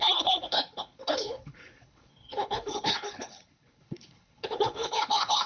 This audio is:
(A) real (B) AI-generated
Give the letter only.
B